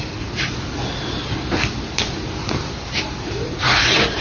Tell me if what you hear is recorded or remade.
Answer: recorded